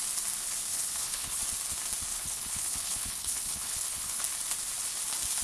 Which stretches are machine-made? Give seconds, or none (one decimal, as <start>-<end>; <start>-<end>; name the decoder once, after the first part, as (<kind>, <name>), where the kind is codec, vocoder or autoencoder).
0.7-1.4 (codec, HILCodec); 2.1-4.2